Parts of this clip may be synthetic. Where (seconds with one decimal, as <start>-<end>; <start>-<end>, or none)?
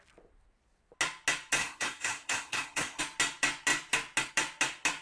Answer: 1.6-3.0